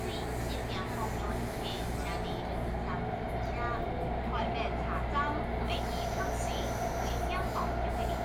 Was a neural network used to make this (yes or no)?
no